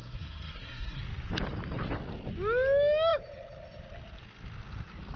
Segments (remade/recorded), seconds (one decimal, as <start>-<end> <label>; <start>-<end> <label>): 0.0-1.0 remade; 1.0-5.2 recorded